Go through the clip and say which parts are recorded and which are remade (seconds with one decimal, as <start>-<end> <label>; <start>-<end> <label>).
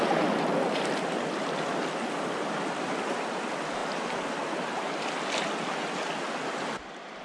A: 0.0-7.2 recorded